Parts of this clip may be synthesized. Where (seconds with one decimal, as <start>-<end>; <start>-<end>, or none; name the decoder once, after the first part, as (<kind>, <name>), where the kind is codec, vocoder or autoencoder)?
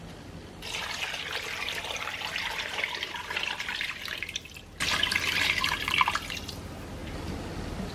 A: 0.0-7.0 (vocoder, BigVGAN v2)